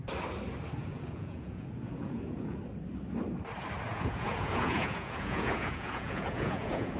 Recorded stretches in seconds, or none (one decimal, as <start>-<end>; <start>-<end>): 0.0-0.8; 2.6-3.9